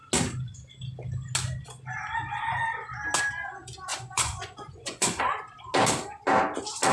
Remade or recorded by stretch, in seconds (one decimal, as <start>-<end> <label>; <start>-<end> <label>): 0.0-3.9 recorded; 3.9-5.2 remade; 5.2-6.9 recorded